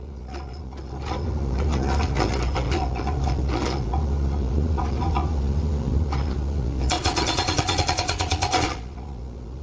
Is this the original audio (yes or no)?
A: no